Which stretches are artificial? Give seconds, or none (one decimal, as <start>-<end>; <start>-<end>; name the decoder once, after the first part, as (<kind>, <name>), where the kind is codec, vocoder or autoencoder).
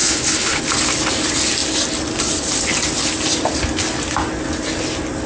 0.0-0.6 (codec, HILCodec)